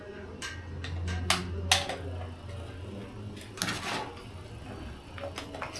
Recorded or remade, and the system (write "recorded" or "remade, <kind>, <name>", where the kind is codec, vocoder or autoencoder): recorded